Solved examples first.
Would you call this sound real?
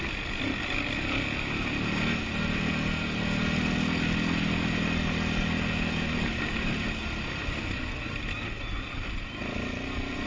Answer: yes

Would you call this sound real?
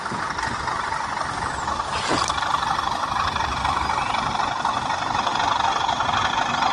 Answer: yes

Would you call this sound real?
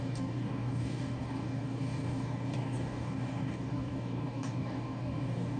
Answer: no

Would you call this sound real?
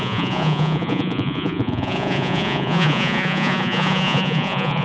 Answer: no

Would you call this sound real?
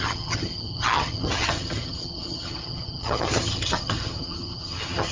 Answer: no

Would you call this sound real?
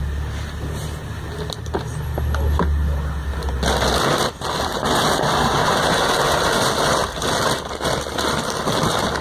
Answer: yes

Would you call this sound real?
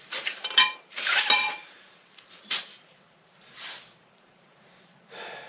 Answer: no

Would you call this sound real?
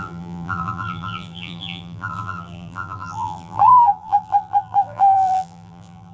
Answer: no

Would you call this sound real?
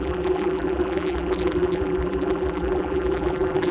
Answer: no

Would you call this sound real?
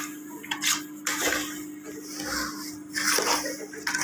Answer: yes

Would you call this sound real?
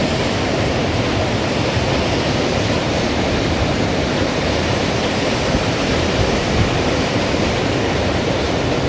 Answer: no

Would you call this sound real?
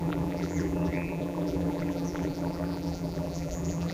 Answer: no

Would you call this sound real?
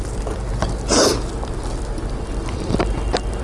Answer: yes